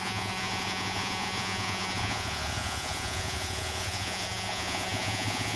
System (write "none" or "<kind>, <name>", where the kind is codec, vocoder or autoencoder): vocoder, Vocos